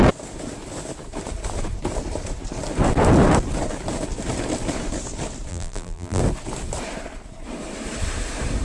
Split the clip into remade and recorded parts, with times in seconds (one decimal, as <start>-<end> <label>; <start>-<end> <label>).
0.0-5.5 recorded; 5.5-6.2 remade; 6.2-8.6 recorded